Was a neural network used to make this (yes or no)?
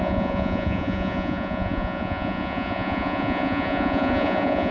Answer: yes